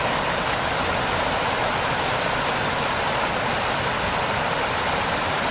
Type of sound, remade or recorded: recorded